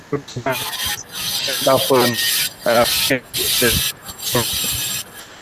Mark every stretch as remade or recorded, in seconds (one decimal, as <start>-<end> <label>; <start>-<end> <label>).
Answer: 0.0-0.5 recorded; 0.5-1.9 remade; 1.9-4.0 recorded; 4.0-4.6 remade; 4.6-5.4 recorded